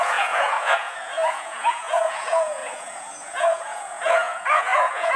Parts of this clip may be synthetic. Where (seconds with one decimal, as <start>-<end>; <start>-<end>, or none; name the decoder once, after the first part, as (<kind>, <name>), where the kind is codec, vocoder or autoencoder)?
0.0-5.2 (vocoder, Vocos)